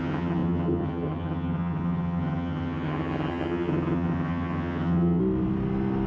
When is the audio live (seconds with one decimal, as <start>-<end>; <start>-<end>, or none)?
5.2-6.1